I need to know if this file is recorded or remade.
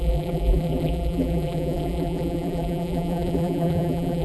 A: remade